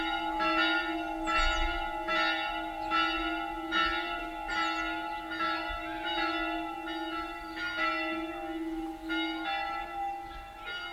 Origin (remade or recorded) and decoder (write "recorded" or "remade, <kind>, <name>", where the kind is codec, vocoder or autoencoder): recorded